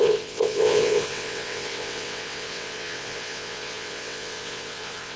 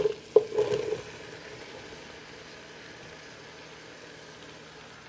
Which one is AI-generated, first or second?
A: first